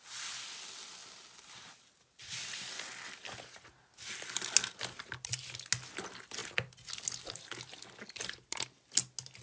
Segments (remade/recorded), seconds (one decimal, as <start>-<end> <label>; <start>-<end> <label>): 0.0-9.4 recorded